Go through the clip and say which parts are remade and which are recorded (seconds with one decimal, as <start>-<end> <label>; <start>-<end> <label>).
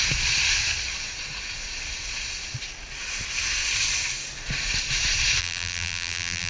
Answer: 0.0-5.4 recorded; 5.4-6.5 remade